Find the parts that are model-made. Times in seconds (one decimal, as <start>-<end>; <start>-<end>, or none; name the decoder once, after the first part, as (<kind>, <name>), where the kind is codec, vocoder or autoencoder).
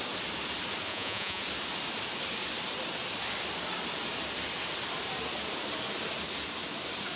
0.9-1.4 (vocoder, Vocos)